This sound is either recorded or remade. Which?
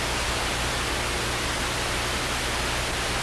recorded